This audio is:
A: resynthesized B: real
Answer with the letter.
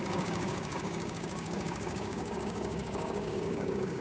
A